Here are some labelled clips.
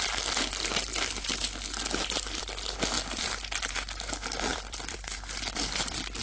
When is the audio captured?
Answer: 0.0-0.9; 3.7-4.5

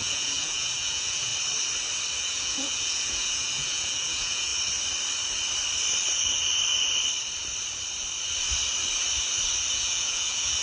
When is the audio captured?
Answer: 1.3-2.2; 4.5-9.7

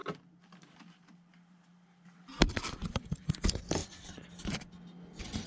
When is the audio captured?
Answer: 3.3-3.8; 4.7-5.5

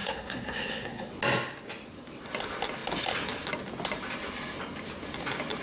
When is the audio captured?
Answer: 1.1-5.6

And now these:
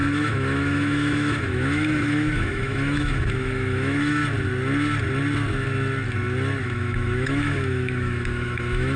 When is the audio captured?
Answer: 4.2-6.6

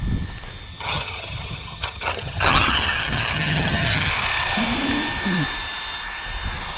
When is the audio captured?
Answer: 0.0-0.7; 4.1-6.8

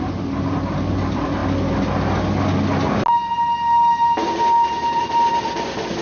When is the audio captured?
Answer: 0.0-6.0

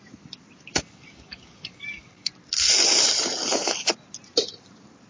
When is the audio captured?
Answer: 0.0-0.7; 2.3-5.1